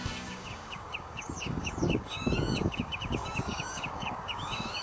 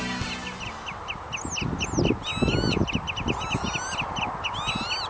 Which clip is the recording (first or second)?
second